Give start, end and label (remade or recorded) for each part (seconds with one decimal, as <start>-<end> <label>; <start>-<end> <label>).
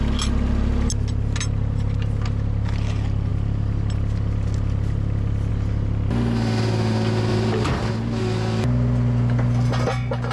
0.0-7.3 recorded; 7.3-7.8 remade; 7.8-10.3 recorded